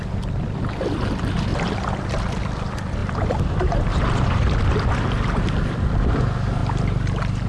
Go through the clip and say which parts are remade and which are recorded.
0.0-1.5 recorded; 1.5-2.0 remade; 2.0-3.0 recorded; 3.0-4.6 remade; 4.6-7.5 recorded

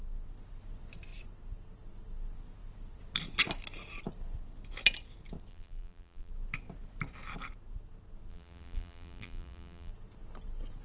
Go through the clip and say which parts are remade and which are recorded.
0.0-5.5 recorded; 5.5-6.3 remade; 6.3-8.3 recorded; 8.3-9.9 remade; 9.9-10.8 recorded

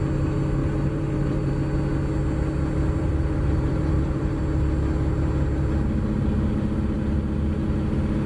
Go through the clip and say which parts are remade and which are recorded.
0.0-0.6 recorded; 0.6-1.5 remade; 1.5-3.0 recorded; 3.0-4.4 remade; 4.4-8.3 recorded